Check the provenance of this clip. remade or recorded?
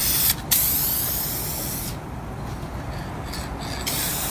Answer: recorded